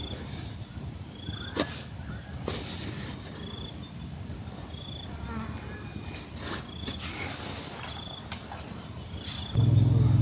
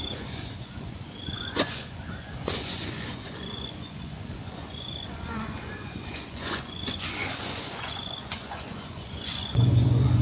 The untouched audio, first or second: first